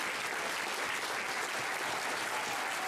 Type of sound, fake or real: real